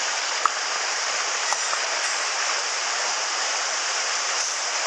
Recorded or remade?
remade